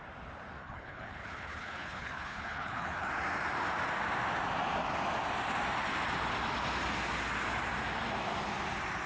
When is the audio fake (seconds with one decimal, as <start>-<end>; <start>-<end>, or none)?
0.6-3.1